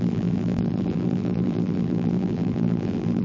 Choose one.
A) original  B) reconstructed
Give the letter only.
B